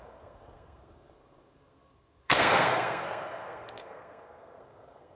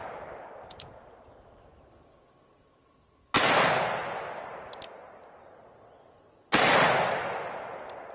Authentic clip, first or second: second